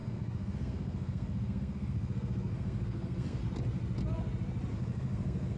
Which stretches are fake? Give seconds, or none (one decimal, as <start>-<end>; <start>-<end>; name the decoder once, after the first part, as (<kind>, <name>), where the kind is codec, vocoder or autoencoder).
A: 0.0-3.4 (codec, SNAC); 4.7-5.6